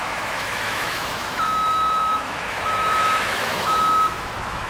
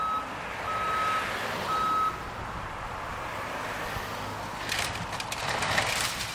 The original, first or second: second